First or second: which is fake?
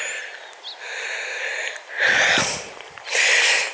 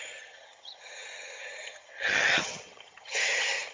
second